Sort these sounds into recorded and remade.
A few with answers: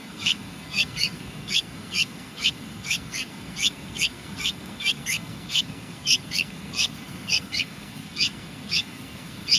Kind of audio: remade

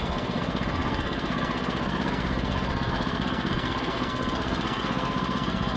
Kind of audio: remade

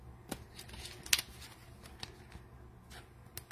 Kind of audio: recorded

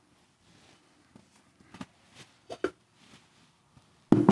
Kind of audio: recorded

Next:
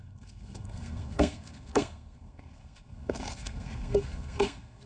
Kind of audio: remade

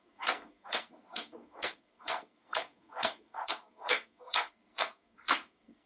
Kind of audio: remade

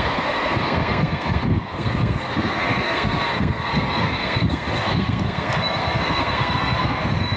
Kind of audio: remade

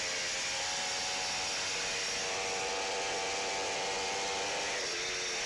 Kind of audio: recorded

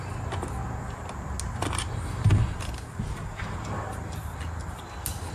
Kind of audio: recorded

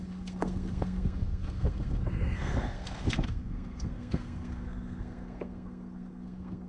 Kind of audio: remade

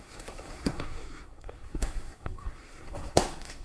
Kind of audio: remade